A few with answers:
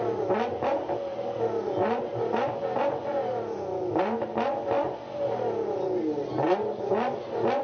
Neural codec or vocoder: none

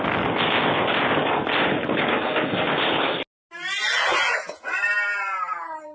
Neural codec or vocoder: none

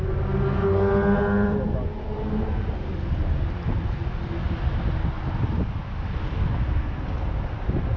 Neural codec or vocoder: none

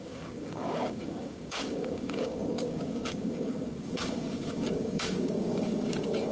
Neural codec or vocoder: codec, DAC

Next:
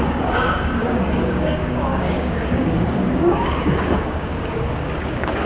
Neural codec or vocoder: codec, DAC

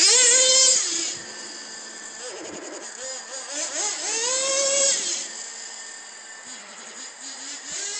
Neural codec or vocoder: none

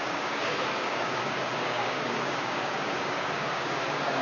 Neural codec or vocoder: codec, DAC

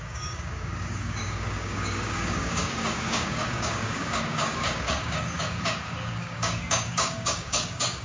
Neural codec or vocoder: codec, DAC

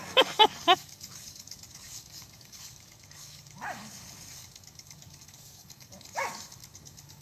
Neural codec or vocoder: codec, DAC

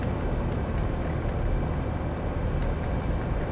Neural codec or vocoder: none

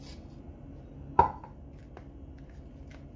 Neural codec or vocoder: none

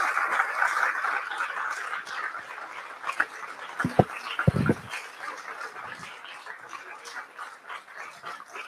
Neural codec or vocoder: none